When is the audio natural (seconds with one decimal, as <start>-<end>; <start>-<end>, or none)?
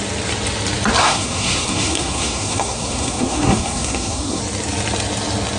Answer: 0.0-1.0; 4.4-5.6